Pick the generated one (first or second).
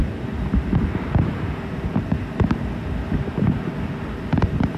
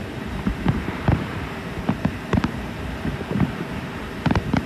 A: second